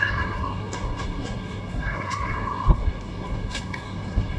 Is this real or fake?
fake